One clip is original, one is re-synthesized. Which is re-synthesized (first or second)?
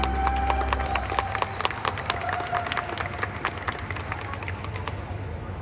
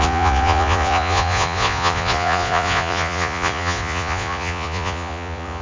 second